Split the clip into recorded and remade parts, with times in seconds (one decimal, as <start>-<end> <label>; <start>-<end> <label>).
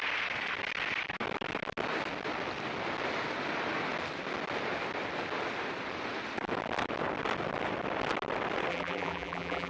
0.0-8.7 recorded; 8.7-9.7 remade